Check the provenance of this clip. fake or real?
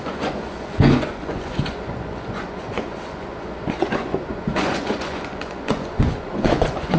fake